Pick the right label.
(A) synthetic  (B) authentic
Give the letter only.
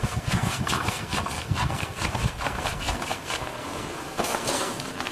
A